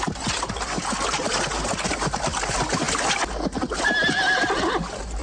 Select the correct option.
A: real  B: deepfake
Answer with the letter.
A